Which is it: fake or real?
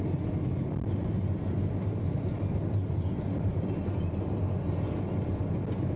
real